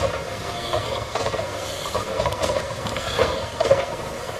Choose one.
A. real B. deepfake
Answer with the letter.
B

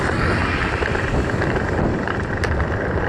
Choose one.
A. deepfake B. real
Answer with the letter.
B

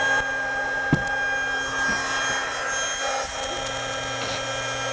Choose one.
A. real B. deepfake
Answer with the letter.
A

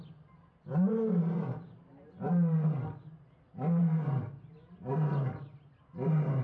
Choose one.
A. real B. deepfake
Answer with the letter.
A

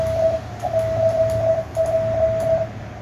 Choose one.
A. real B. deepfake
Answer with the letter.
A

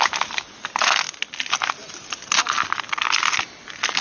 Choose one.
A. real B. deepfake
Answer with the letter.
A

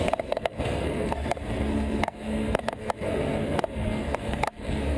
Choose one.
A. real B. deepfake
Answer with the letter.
B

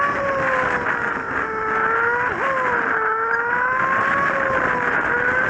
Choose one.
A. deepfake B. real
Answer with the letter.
B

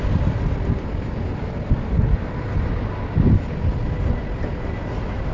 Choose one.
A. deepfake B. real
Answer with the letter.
B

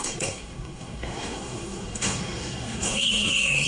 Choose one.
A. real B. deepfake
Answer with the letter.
B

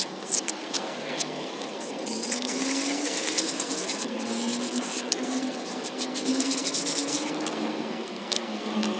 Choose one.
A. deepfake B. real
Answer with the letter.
A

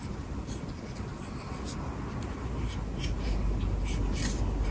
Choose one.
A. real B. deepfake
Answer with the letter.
A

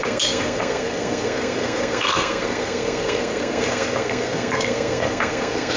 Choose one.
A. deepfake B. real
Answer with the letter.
A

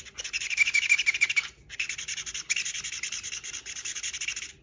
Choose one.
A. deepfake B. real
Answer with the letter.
B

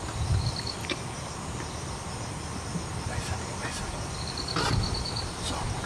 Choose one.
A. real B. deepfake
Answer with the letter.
A